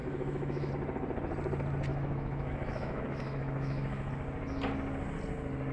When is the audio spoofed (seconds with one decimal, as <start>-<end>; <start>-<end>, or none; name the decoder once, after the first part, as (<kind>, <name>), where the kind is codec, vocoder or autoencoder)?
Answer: 0.0-0.7 (autoencoder, DAC-VAE); 1.9-4.1